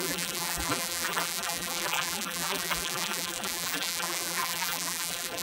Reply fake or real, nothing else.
fake